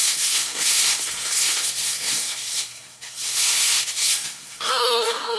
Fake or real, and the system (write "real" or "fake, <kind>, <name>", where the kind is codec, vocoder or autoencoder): fake, codec, SNAC